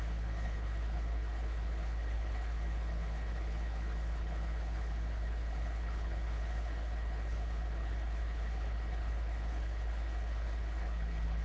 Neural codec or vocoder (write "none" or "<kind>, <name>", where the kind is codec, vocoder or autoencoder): codec, HILCodec